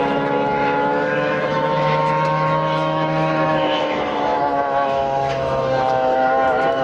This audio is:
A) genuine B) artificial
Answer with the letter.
B